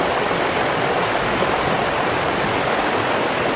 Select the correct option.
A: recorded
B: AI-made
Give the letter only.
A